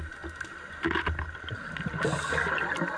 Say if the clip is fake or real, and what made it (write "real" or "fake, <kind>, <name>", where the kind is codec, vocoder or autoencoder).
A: real